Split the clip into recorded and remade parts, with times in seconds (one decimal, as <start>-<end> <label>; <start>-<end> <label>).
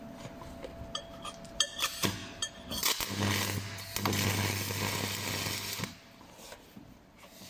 0.0-7.5 recorded